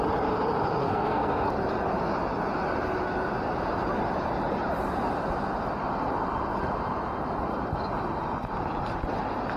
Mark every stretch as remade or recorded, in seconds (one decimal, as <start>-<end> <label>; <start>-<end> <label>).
0.0-0.8 recorded; 0.8-1.5 remade; 1.5-9.6 recorded